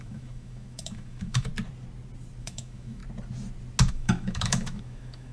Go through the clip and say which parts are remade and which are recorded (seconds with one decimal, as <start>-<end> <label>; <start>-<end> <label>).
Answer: 0.0-1.5 remade; 1.5-2.4 recorded; 2.4-3.0 remade; 3.0-3.9 recorded; 3.9-5.3 remade